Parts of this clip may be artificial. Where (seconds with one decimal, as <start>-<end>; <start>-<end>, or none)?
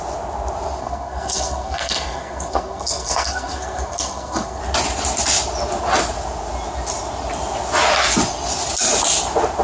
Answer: 0.8-4.6